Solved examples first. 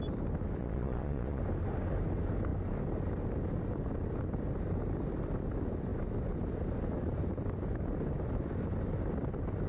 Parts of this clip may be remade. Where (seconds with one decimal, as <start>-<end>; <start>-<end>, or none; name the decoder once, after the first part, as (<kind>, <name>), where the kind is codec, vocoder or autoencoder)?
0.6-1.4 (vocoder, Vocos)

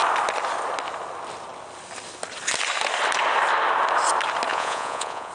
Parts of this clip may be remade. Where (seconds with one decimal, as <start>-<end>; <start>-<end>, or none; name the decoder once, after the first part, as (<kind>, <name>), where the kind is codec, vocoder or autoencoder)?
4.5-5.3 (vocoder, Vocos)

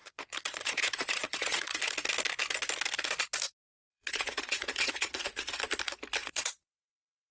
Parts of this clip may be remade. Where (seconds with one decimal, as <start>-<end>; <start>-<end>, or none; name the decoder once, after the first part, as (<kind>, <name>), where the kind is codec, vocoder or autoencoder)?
0.0-1.8 (vocoder, Vocos); 3.9-5.7; 6.2-7.3